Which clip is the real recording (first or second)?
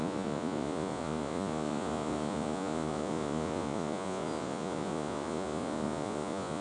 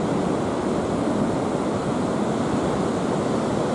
second